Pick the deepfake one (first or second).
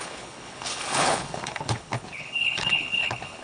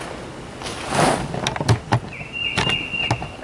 first